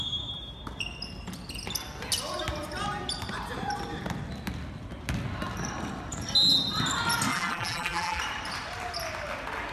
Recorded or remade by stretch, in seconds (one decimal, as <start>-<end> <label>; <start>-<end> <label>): 0.0-7.3 recorded; 7.3-8.2 remade; 8.2-9.7 recorded